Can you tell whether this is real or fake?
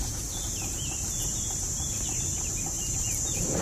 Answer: fake